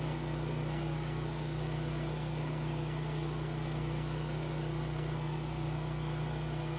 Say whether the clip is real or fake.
fake